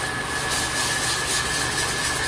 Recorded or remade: recorded